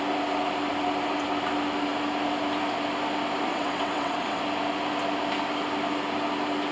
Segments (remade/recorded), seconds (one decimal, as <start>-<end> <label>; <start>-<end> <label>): 0.0-3.5 recorded; 3.5-4.4 remade; 4.4-6.7 recorded

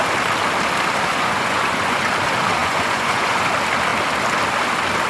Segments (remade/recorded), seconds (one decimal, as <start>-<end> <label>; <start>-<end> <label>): 0.0-1.1 recorded; 1.1-2.1 remade; 2.1-2.6 recorded; 2.6-3.4 remade; 3.4-5.1 recorded

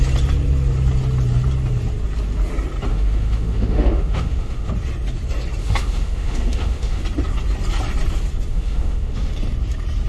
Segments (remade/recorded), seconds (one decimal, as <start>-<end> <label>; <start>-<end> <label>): 0.0-2.9 recorded; 2.9-4.7 remade; 4.7-5.6 recorded; 5.6-7.0 remade; 7.0-8.5 recorded; 8.5-9.3 remade; 9.3-10.1 recorded

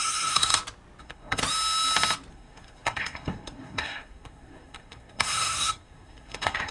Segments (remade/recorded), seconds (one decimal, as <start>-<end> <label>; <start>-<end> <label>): 0.0-0.5 remade; 0.5-1.0 recorded; 1.0-1.4 remade; 1.4-2.3 recorded; 2.3-6.7 remade

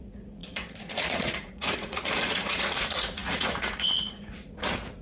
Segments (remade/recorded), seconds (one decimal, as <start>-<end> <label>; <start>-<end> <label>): 0.0-5.0 remade

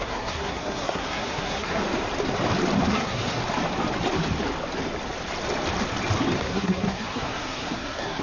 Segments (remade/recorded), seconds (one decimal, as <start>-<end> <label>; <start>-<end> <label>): 0.0-1.8 remade; 1.8-2.9 recorded; 2.9-3.4 remade; 3.4-6.4 recorded; 6.4-8.2 remade

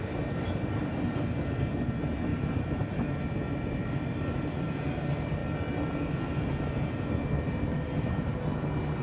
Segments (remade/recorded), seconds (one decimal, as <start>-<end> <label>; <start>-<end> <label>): 0.0-9.0 recorded